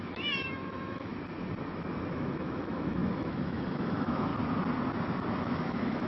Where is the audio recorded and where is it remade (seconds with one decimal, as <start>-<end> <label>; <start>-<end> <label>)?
0.0-1.1 remade; 1.1-2.1 recorded; 2.1-4.3 remade; 4.3-5.4 recorded; 5.4-6.1 remade